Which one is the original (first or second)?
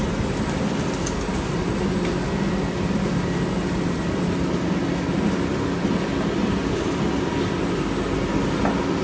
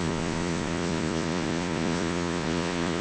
first